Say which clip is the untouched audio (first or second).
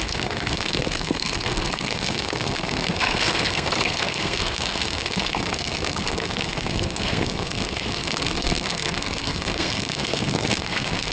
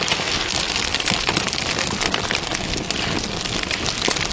second